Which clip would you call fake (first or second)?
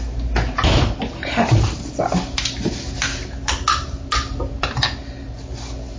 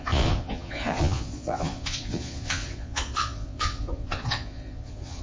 second